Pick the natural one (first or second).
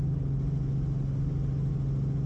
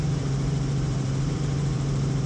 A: first